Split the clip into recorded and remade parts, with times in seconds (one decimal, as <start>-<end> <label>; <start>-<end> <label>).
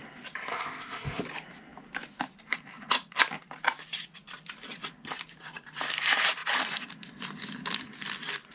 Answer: 0.0-0.5 recorded; 0.5-1.2 remade; 1.2-8.5 recorded